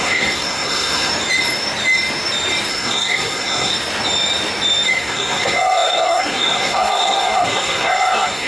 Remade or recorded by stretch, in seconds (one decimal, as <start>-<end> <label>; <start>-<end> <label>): 0.0-1.1 remade; 1.1-2.7 recorded; 2.7-3.7 remade; 3.7-4.9 recorded; 4.9-8.5 remade